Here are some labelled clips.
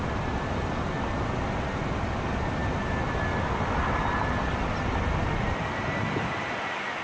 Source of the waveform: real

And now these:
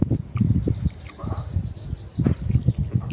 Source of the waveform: real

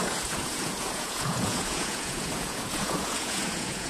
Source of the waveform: fake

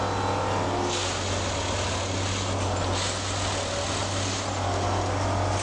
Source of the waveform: real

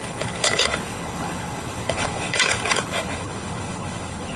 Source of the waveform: fake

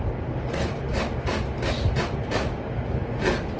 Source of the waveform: real